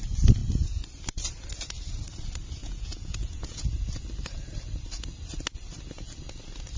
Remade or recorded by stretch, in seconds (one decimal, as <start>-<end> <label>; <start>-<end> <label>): 0.0-2.6 recorded; 2.6-3.6 remade; 3.6-6.8 recorded